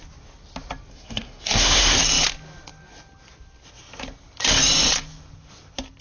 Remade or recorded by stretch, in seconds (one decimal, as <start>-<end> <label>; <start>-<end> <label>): 0.0-0.9 recorded; 0.9-2.0 remade; 2.0-6.0 recorded